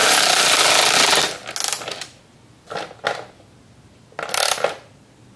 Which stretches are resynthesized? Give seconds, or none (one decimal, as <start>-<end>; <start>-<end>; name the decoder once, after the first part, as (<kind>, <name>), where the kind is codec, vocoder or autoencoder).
none